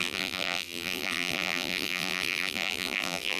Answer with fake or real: fake